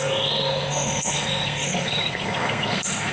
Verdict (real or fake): fake